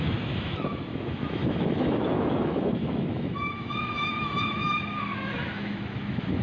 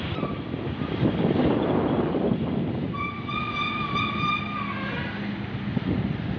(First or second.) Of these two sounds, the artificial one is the first